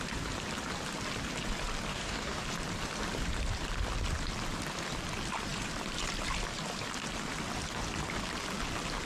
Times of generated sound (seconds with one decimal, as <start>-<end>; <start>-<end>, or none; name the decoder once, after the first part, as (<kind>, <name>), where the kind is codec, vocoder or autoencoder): 1.9-2.4 (codec, DAC)